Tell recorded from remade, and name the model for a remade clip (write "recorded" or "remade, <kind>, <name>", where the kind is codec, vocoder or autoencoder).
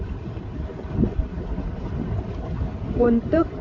remade, vocoder, BigVGAN v2